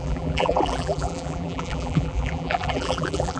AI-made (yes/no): yes